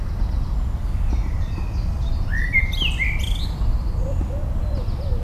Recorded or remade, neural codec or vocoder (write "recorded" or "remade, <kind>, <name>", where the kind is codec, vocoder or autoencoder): recorded